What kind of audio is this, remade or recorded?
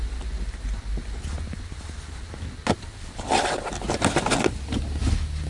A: recorded